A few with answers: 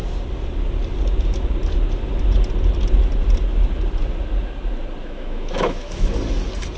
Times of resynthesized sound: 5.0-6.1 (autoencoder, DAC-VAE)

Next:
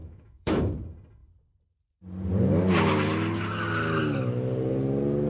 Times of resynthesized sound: 0.0-0.7 (autoencoder, DAC-VAE)